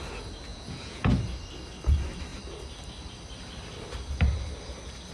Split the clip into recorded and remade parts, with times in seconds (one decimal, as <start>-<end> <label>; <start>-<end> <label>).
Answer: 0.0-0.5 recorded; 0.5-1.1 remade; 1.1-5.1 recorded